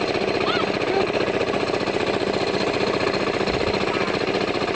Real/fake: real